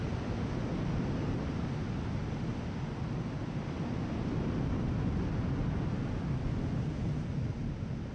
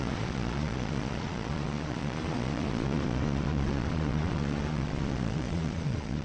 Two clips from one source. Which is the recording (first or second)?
first